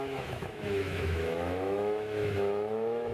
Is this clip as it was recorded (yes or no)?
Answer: no